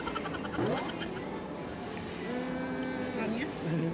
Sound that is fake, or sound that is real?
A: real